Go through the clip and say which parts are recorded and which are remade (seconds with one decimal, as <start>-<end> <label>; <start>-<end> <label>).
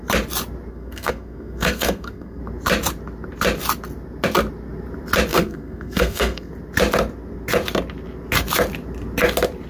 0.0-0.7 recorded; 0.7-2.4 remade; 2.4-5.3 recorded; 5.3-6.5 remade; 6.5-9.7 recorded